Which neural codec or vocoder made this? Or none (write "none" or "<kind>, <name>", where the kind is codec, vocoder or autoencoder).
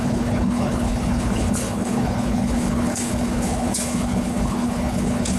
codec, HILCodec